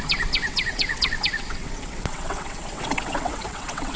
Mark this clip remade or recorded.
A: remade